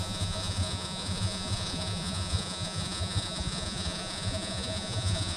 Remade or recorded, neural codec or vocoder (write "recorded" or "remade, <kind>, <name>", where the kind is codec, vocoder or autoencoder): remade, vocoder, Vocos